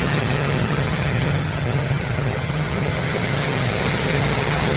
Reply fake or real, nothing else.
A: fake